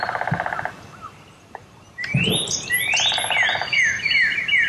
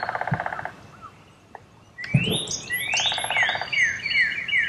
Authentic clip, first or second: second